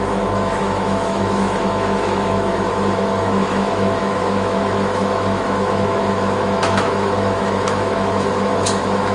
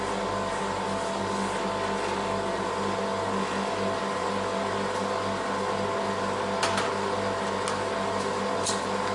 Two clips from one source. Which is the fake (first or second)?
first